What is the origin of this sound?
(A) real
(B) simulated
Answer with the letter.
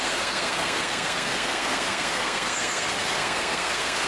B